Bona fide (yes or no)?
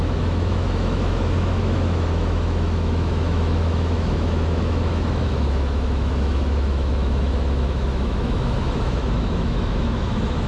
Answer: no